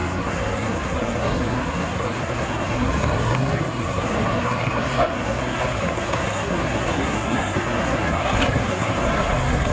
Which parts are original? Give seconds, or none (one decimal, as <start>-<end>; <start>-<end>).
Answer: none